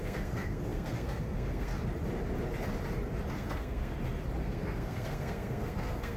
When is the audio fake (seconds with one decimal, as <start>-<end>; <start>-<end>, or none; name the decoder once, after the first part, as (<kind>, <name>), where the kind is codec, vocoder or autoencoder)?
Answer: 0.0-1.7 (codec, SNAC); 3.3-3.9; 4.4-6.2

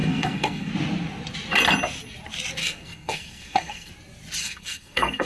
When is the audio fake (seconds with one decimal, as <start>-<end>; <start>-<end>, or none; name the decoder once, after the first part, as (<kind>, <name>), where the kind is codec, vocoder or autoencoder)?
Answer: 0.0-0.7 (codec, SNAC); 2.6-3.9; 4.4-5.3

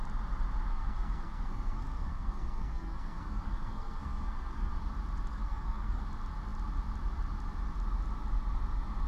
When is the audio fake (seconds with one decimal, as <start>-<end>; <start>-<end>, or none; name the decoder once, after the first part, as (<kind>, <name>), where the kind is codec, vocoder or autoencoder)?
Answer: 0.7-4.7 (codec, SNAC); 5.3-6.0

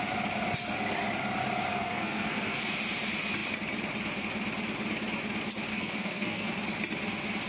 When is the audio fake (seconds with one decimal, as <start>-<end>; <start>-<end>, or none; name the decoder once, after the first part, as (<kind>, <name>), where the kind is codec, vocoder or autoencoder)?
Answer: 1.7-2.6 (codec, SNAC); 5.7-6.5

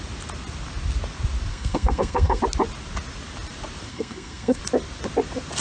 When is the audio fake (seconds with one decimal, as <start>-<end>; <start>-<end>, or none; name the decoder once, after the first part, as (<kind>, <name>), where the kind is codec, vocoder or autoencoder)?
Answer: 1.5-2.4 (codec, SNAC); 3.9-4.6